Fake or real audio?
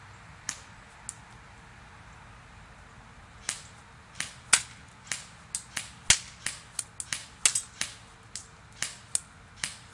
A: real